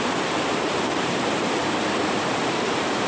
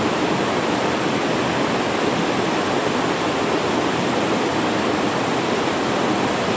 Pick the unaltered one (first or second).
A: second